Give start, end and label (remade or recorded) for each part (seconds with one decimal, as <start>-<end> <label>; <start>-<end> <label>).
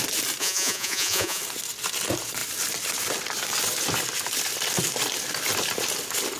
0.0-0.4 recorded; 0.4-1.4 remade; 1.4-6.4 recorded